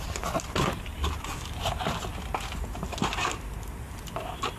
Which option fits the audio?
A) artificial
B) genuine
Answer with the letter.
B